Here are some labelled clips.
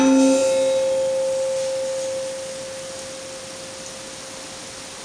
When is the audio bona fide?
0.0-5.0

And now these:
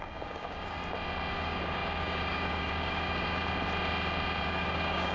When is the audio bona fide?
0.8-1.3; 3.4-4.4